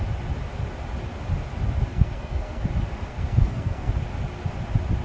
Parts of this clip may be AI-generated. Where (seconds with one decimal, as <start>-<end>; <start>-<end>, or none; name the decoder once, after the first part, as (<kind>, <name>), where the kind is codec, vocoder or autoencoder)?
1.9-2.7 (codec, SNAC); 3.1-3.9